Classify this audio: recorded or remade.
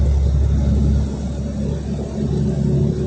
recorded